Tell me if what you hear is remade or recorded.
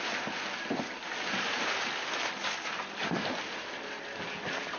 recorded